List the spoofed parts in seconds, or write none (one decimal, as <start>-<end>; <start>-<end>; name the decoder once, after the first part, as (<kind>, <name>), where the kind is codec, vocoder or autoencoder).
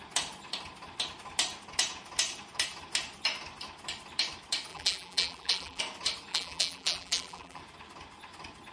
4.7-5.8 (vocoder, BigVGAN v2); 6.3-7.6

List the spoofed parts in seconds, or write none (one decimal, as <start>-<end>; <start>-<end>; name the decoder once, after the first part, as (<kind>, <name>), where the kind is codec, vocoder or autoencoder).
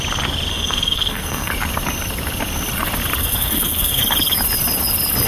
0.5-1.5 (codec, SNAC); 3.2-4.0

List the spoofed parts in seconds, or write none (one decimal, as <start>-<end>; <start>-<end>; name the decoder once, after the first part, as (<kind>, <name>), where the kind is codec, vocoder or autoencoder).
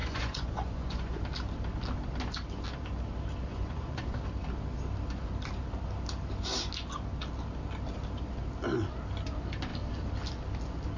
0.0-1.2 (vocoder, Vocos); 3.5-4.0